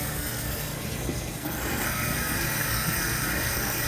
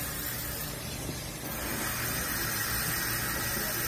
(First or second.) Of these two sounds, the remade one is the first